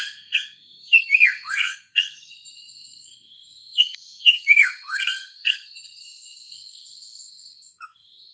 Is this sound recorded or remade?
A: remade